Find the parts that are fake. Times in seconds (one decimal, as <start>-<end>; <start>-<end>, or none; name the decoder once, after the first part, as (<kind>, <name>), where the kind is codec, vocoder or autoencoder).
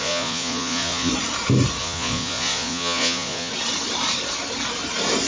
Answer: 0.0-1.1 (vocoder, Vocos); 1.8-3.5